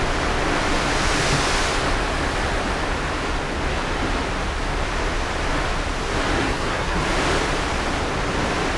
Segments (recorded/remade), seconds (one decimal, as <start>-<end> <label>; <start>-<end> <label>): 0.0-6.4 recorded; 6.4-7.0 remade; 7.0-8.8 recorded